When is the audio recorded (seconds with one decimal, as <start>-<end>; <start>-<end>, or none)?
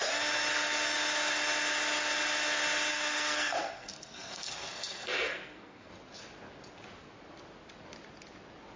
0.0-2.9; 5.9-8.8